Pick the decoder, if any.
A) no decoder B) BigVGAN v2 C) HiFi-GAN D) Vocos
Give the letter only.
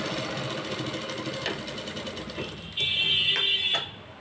A